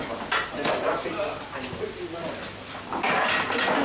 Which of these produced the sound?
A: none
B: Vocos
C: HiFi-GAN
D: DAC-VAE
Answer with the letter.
A